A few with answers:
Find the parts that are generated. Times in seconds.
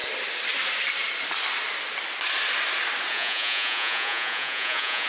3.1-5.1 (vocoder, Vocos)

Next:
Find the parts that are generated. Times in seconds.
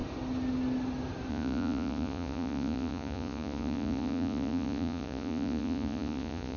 1.3-6.6 (vocoder, Vocos)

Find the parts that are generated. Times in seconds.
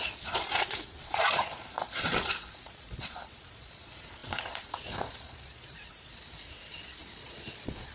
0.0-7.9 (vocoder, Vocos)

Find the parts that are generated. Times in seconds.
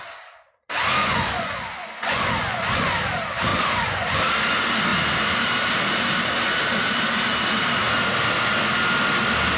1.0-3.0 (vocoder, Vocos); 3.5-4.2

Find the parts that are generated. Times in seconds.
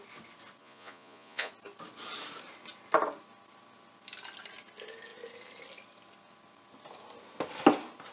0.6-1.5 (vocoder, Vocos)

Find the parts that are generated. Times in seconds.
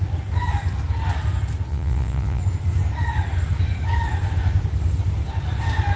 1.7-2.4 (vocoder, Vocos)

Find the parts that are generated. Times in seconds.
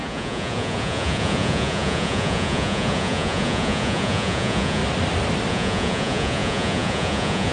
0.0-4.8 (vocoder, Vocos); 5.5-7.5